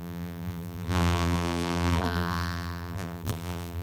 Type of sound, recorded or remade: remade